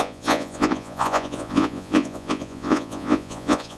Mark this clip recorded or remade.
remade